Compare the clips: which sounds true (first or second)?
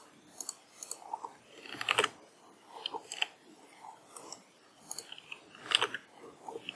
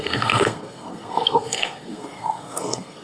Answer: first